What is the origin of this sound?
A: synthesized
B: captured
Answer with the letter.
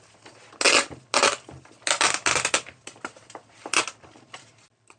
B